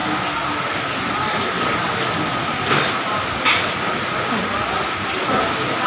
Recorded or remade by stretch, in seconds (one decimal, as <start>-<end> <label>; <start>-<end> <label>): 0.0-5.9 recorded